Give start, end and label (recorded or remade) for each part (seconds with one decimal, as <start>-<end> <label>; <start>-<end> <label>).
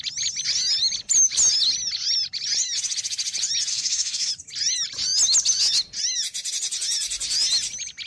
0.0-3.7 recorded; 3.7-4.3 remade; 4.3-8.1 recorded